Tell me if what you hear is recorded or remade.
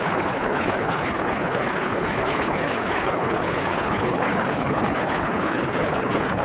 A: remade